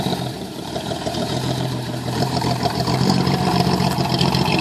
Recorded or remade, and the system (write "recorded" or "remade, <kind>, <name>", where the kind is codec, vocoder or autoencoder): remade, vocoder, BigVGAN v2